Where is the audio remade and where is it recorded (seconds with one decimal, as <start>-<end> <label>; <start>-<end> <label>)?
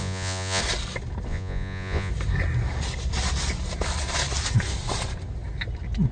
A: 0.0-0.6 remade; 0.6-1.3 recorded; 1.3-2.1 remade; 2.1-6.1 recorded